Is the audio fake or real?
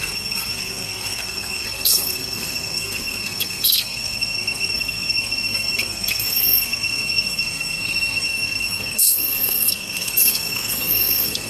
fake